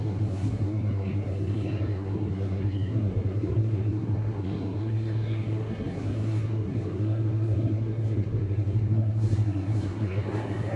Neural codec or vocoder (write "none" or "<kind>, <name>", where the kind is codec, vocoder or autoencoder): codec, SNAC